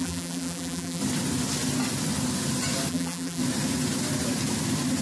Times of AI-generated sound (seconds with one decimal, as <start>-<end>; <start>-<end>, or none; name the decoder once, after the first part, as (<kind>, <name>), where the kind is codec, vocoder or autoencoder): 0.0-1.0 (vocoder, BigVGAN v2); 2.9-3.4